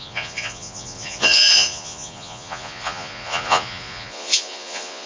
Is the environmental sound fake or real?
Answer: fake